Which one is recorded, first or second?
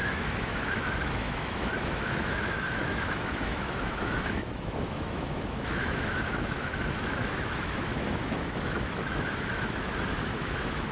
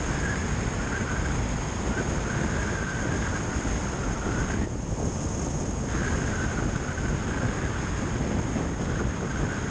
second